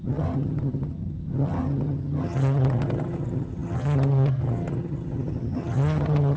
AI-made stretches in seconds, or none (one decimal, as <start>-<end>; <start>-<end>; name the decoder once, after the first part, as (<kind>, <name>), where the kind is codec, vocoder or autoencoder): 0.0-6.4 (vocoder, HiFi-GAN)